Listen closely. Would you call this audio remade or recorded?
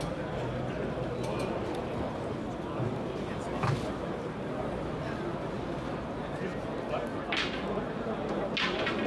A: recorded